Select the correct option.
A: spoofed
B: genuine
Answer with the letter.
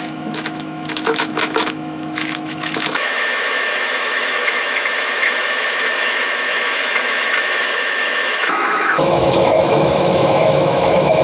A